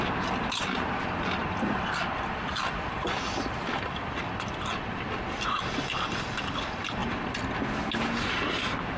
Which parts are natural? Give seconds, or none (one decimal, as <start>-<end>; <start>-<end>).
0.0-1.4; 4.2-9.0